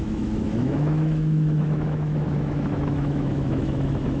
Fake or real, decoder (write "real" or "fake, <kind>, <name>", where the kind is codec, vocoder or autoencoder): fake, autoencoder, DAC-VAE